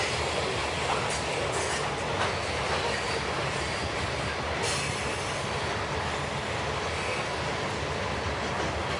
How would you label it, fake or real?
real